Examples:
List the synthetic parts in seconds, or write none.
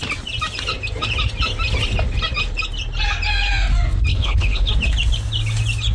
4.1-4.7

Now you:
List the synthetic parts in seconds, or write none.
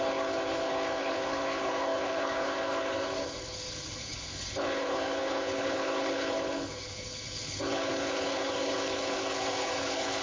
0.0-10.2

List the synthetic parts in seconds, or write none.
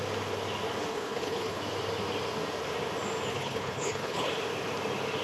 0.9-1.6; 3.3-4.3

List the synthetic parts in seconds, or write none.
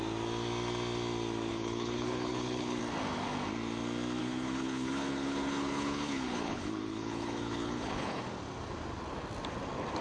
1.5-2.8; 4.2-8.2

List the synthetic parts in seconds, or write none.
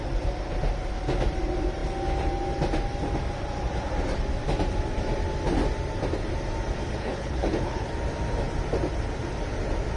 7.0-7.9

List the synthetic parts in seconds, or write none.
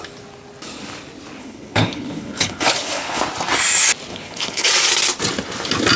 1.4-3.2; 4.1-4.7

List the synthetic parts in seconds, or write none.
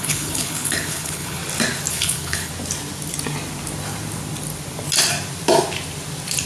0.0-1.4; 1.9-2.5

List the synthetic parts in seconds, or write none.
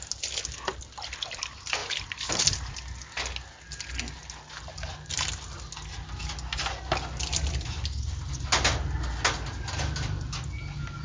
none